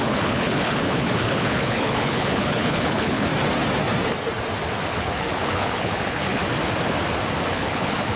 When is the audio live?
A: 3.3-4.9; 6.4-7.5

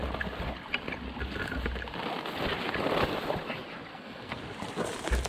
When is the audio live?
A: 0.0-3.9; 4.4-5.3

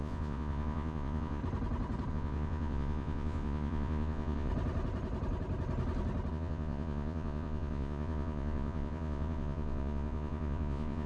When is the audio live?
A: 1.4-2.1; 4.5-6.3

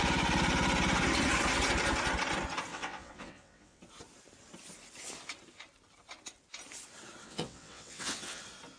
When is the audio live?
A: 0.0-2.7; 3.8-7.2; 8.4-8.8

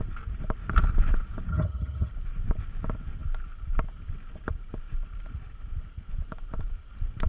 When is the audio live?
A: 0.0-1.5; 2.1-7.3

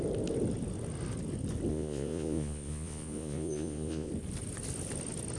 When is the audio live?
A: 0.0-1.7; 4.1-5.4

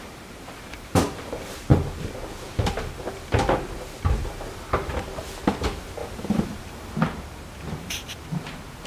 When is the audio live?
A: 1.7-5.5

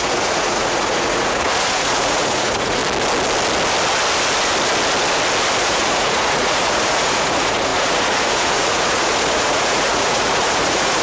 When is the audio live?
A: 2.8-5.6